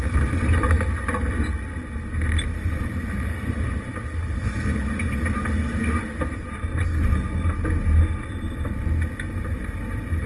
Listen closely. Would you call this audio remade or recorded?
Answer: recorded